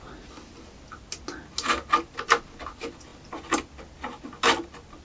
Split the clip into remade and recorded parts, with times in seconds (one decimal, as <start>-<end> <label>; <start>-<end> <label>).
0.0-5.0 recorded